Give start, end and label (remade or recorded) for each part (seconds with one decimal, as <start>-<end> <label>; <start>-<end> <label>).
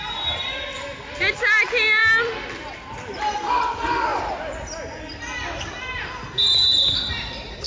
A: 0.0-7.7 recorded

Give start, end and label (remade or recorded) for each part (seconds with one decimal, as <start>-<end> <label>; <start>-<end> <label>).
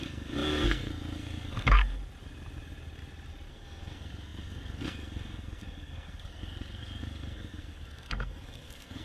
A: 0.0-2.0 remade; 2.0-3.5 recorded; 3.5-9.0 remade